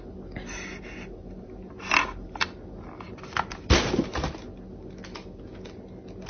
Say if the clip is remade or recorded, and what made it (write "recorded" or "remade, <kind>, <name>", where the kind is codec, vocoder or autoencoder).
recorded